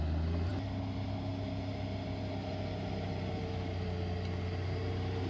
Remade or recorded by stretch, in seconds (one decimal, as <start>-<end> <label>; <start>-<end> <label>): 0.0-5.3 recorded